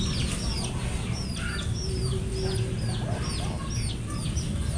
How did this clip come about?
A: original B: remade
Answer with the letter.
A